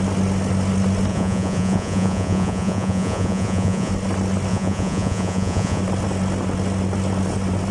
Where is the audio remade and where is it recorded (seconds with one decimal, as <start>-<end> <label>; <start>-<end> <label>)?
0.0-1.1 recorded; 1.1-3.9 remade; 3.9-4.5 recorded; 4.5-5.8 remade; 5.8-7.7 recorded